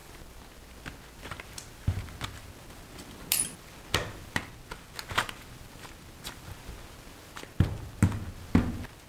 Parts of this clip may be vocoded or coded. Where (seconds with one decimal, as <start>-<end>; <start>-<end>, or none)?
none